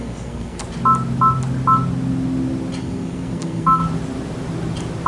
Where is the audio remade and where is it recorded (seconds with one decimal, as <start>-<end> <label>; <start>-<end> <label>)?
0.0-0.6 remade; 0.6-2.8 recorded; 2.8-3.8 remade; 3.8-5.1 recorded